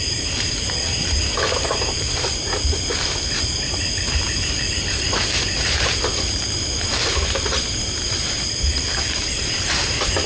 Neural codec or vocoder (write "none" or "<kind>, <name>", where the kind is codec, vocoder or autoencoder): vocoder, BigVGAN v2